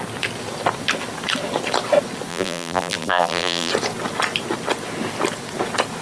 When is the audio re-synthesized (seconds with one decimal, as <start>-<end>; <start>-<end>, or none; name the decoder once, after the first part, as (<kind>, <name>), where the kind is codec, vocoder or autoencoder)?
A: 2.3-3.7 (vocoder, BigVGAN v2)